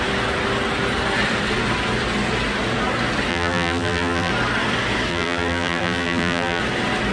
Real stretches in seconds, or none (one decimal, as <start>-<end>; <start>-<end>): 0.0-3.3; 4.3-5.1; 6.6-7.1